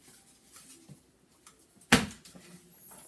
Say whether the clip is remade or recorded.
recorded